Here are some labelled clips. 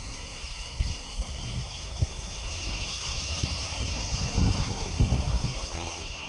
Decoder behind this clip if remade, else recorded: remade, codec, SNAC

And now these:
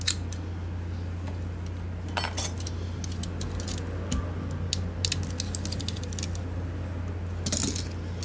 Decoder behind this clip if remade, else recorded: recorded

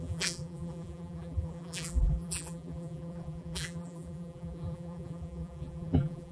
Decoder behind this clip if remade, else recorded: remade, vocoder, BigVGAN v2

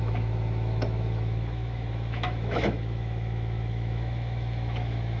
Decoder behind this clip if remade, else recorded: remade, autoencoder, DAC-VAE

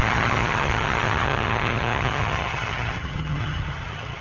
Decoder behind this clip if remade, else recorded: remade, vocoder, HiFi-GAN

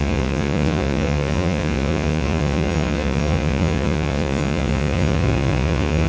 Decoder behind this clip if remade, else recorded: remade, vocoder, Vocos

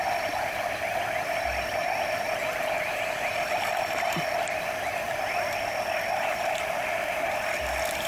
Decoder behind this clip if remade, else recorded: recorded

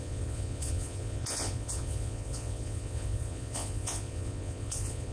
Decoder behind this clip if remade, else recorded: remade, vocoder, Vocos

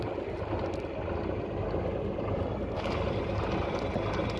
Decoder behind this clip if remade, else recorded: recorded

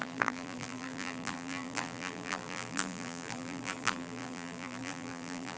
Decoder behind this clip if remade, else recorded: remade, vocoder, BigVGAN v2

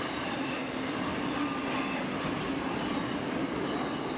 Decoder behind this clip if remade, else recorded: recorded